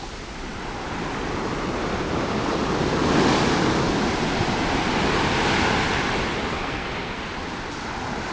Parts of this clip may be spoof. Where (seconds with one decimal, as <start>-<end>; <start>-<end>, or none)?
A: 6.5-7.2